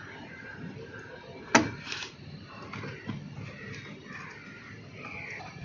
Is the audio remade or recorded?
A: recorded